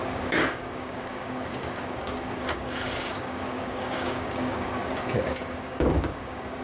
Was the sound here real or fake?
fake